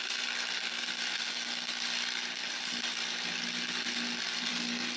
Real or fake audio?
real